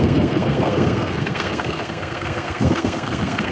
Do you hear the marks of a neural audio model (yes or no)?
yes